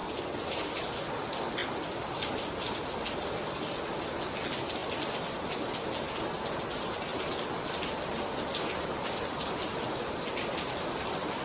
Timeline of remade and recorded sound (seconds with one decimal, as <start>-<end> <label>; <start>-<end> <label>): 0.0-11.4 recorded